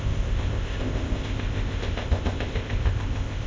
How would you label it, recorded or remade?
remade